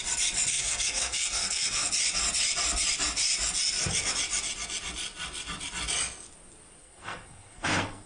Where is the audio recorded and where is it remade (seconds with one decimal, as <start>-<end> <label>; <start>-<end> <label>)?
0.0-0.5 recorded; 0.5-1.9 remade; 1.9-6.8 recorded; 6.8-8.1 remade